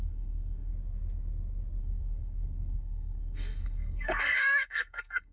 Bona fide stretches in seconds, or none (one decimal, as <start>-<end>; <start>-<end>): 0.7-1.8